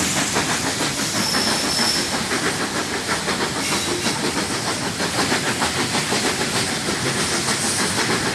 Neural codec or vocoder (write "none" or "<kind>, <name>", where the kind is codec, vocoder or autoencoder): none